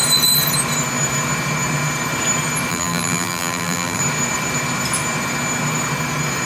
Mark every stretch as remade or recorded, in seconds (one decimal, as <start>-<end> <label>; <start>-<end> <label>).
0.0-2.7 recorded; 2.7-4.0 remade; 4.0-6.4 recorded